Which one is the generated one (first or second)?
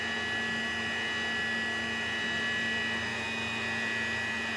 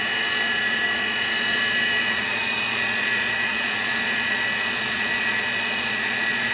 second